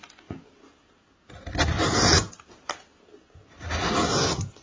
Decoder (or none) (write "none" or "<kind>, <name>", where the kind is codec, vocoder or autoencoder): none